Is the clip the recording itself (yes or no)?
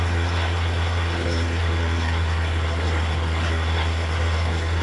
no